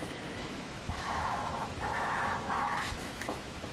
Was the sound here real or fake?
fake